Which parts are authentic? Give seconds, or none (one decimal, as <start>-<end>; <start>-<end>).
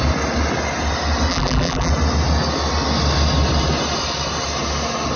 0.0-1.3; 1.9-5.2